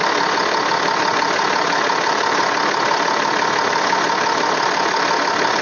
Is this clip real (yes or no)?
no